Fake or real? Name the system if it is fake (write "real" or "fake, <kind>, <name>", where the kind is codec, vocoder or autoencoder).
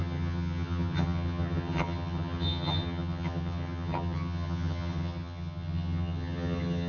fake, vocoder, HiFi-GAN